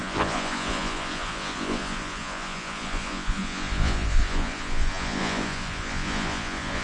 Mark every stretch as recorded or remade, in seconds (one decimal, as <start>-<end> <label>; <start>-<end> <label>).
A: 0.0-6.8 remade